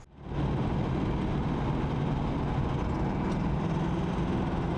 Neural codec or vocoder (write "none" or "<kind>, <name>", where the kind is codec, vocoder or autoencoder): none